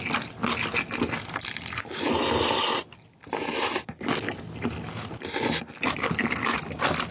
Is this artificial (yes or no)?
no